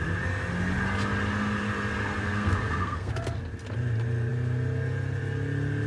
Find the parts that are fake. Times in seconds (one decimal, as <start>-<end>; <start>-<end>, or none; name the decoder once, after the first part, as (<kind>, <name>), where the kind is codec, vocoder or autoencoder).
2.2-3.1 (codec, SNAC)